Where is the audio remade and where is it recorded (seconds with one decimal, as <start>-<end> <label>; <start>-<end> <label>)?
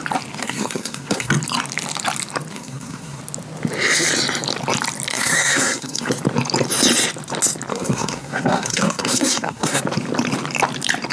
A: 0.0-0.4 recorded; 0.4-1.3 remade; 1.3-2.5 recorded; 2.5-3.2 remade; 3.2-5.1 recorded; 5.1-6.1 remade; 6.1-7.7 recorded; 7.7-9.8 remade; 9.8-11.1 recorded